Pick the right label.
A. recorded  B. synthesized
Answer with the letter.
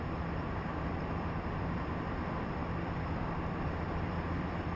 B